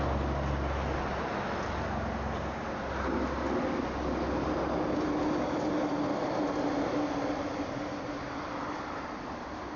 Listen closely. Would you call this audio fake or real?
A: real